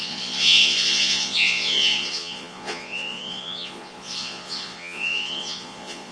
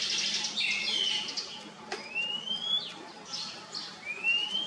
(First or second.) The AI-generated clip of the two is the first